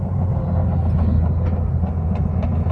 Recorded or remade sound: recorded